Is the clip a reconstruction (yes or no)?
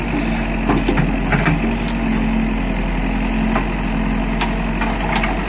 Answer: no